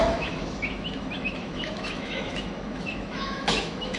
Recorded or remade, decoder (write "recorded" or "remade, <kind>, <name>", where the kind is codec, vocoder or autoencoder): remade, autoencoder, DAC-VAE